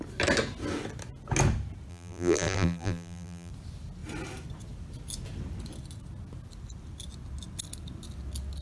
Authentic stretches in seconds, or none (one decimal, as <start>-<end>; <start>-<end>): 0.0-1.9; 3.5-8.6